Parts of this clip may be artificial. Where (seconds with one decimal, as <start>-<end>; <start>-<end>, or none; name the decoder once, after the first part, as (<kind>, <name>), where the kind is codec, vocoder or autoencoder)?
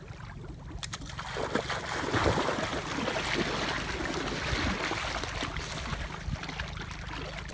none